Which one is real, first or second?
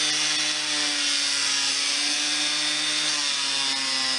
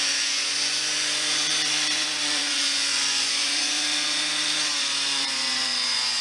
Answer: first